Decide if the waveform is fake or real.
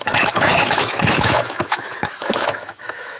fake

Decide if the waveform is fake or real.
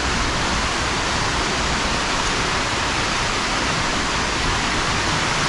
real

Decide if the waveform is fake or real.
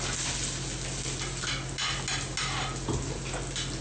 real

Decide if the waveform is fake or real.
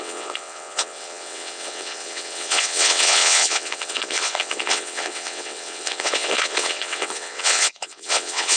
fake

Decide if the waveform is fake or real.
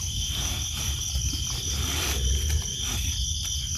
real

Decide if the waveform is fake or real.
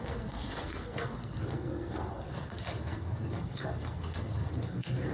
fake